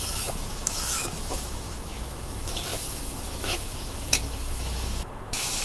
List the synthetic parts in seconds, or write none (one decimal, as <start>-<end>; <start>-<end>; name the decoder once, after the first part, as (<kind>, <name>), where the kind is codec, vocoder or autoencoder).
0.0-5.6 (autoencoder, DAC-VAE)